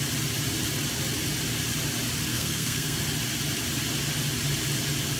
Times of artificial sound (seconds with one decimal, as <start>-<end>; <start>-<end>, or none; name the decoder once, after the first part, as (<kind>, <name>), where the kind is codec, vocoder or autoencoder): 2.3-3.0 (codec, SNAC)